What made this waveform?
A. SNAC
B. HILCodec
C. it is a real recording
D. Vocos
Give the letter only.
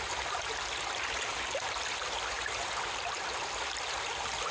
C